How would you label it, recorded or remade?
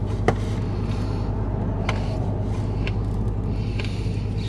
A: recorded